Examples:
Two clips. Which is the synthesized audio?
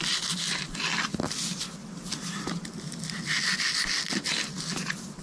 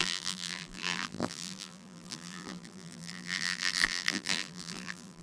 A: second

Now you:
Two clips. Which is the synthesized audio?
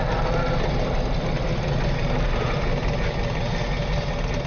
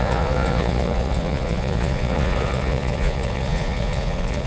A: second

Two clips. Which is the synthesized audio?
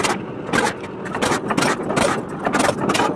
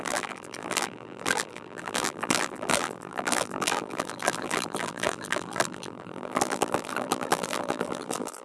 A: second